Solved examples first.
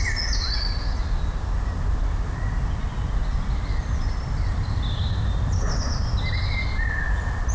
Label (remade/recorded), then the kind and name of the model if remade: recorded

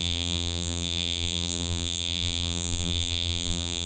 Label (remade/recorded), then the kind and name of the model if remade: remade, vocoder, BigVGAN v2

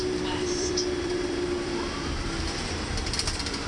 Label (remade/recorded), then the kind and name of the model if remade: remade, vocoder, BigVGAN v2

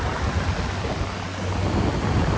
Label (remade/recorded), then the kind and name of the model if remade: recorded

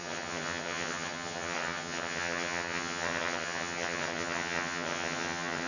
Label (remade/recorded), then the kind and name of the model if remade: remade, vocoder, HiFi-GAN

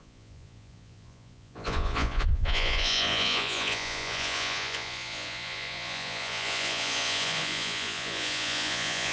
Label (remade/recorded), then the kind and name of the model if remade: remade, vocoder, Vocos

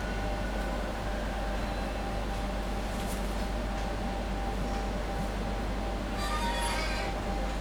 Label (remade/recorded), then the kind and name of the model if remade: recorded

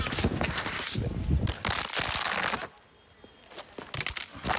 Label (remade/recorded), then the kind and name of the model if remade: recorded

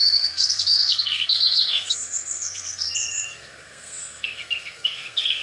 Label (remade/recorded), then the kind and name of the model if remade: remade, codec, SNAC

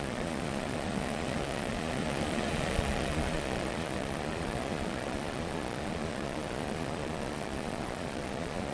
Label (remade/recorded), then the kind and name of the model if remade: remade, vocoder, Vocos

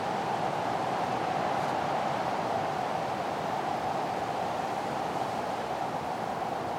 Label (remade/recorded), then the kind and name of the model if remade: remade, vocoder, BigVGAN v2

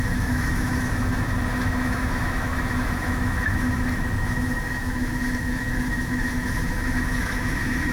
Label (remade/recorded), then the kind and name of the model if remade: remade, autoencoder, DAC-VAE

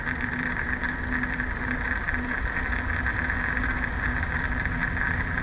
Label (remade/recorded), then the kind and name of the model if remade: recorded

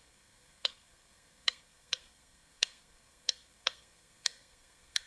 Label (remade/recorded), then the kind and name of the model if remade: remade, codec, SNAC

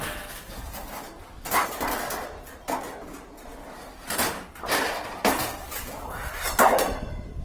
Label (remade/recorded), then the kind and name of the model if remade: recorded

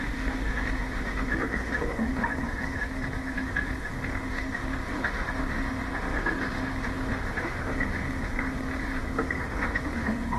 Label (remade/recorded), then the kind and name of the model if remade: remade, autoencoder, DAC-VAE